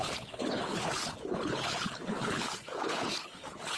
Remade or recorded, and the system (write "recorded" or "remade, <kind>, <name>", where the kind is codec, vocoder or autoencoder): remade, codec, HILCodec